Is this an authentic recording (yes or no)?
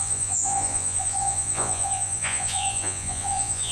no